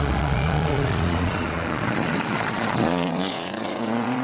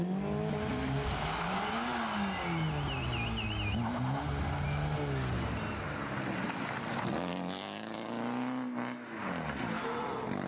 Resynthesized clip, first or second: first